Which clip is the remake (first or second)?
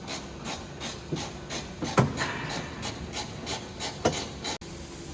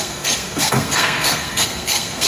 second